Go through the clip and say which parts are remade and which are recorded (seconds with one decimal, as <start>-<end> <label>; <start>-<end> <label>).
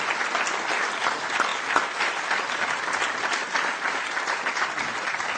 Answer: 0.0-5.4 recorded